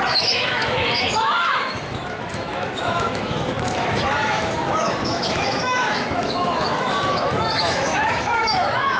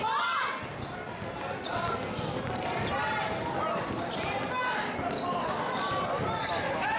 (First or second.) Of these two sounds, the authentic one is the second